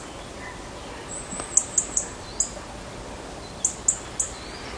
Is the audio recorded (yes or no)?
yes